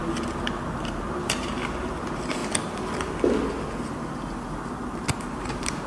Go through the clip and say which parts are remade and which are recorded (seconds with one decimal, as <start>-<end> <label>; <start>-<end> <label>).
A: 0.0-0.8 recorded; 0.8-2.4 remade; 2.4-5.4 recorded; 5.4-5.9 remade